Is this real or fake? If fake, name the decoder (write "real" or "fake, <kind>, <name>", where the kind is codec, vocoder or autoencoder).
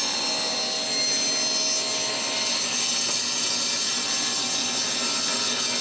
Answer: real